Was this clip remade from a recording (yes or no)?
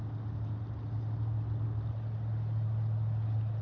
no